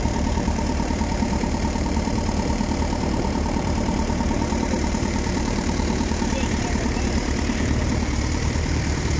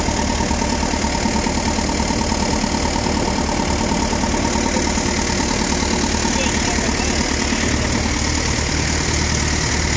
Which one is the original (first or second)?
second